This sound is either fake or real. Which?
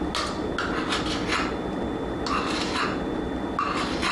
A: real